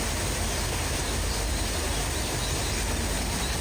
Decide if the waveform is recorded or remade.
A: recorded